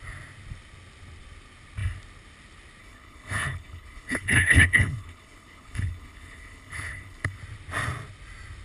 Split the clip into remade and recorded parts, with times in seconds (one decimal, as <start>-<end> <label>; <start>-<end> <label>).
0.0-2.8 recorded; 2.8-7.4 remade; 7.4-8.6 recorded